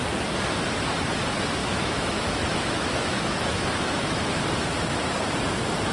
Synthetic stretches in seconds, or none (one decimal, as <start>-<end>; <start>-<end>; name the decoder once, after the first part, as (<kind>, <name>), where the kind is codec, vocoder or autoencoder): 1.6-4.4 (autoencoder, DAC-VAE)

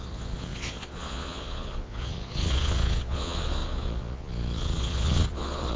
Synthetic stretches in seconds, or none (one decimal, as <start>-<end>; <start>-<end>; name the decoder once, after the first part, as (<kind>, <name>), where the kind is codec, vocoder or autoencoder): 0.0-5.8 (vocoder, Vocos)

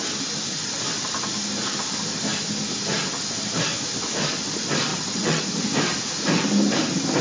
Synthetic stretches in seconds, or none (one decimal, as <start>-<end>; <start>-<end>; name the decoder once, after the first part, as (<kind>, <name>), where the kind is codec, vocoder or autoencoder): 4.9-5.4 (vocoder, WaveNeXt)

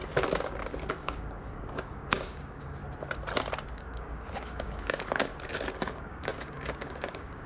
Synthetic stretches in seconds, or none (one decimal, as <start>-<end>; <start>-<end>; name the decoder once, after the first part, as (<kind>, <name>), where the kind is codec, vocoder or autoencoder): 0.9-2.8 (codec, DAC); 3.7-5.3; 5.8-7.5

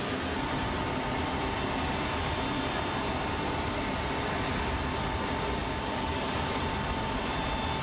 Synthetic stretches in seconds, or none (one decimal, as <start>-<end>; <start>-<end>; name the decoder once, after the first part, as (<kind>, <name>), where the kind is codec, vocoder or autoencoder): 5.6-6.6 (codec, DAC)

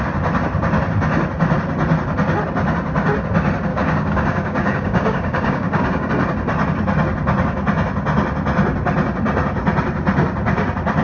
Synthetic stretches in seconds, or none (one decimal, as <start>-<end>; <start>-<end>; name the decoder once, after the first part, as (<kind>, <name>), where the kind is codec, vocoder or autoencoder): 3.7-6.1 (codec, DAC)